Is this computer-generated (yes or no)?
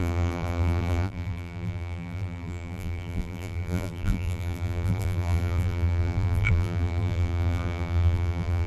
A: yes